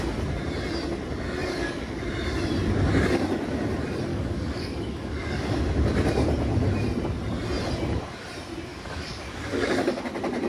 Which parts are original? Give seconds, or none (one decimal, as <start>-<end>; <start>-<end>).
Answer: 0.0-1.4; 2.0-4.1; 5.6-8.7; 10.0-10.5